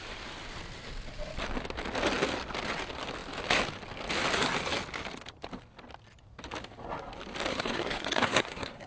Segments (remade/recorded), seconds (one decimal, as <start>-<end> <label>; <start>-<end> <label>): 0.0-7.5 recorded; 7.5-8.9 remade